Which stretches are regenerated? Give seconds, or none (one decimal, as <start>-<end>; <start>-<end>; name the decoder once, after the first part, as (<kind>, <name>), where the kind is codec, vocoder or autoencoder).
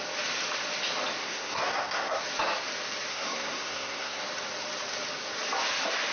1.2-2.2 (codec, SNAC); 3.1-4.2